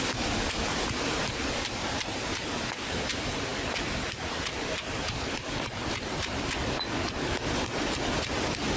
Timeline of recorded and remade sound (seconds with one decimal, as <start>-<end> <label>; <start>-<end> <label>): 0.0-8.8 recorded